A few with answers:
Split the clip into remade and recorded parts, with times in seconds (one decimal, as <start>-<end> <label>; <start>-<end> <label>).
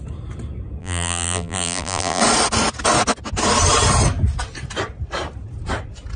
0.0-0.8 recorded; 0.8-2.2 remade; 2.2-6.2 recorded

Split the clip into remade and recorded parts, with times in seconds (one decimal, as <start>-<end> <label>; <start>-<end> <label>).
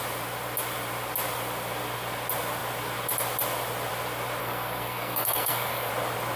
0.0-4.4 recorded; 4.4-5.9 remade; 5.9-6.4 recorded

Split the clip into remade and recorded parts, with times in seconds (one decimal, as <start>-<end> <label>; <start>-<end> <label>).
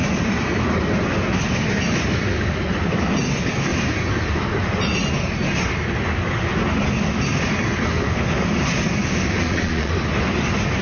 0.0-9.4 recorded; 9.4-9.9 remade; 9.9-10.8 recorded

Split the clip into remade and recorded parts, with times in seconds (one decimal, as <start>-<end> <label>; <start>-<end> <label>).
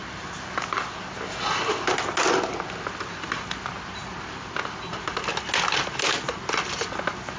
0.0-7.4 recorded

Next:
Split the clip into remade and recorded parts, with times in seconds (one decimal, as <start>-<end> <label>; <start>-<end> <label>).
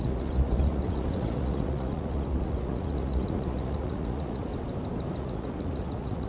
0.0-4.5 remade; 4.5-5.2 recorded; 5.2-6.3 remade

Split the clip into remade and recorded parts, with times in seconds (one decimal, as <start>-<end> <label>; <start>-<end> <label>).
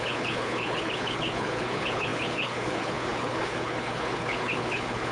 0.0-5.1 remade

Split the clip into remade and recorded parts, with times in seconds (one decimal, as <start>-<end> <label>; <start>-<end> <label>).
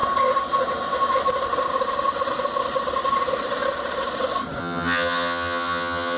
0.0-4.6 recorded; 4.6-6.2 remade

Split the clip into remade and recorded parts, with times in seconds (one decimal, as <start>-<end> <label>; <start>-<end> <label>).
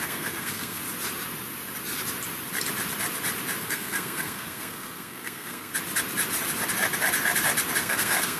0.0-0.8 remade; 0.8-3.6 recorded; 3.6-5.7 remade; 5.7-7.8 recorded; 7.8-8.4 remade